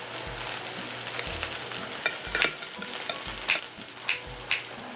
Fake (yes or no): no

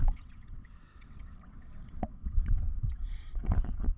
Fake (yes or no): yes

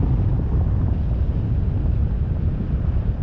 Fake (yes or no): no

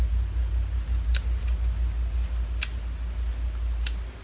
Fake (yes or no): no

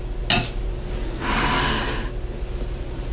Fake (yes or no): no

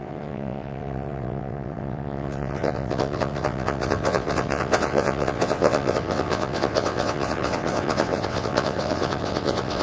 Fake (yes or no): yes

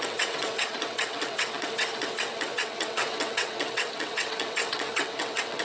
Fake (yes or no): yes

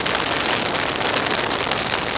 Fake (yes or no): no